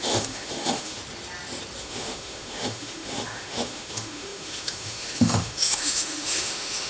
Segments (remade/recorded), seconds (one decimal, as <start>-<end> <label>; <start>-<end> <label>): 0.0-1.0 remade; 1.0-1.8 recorded; 1.8-6.9 remade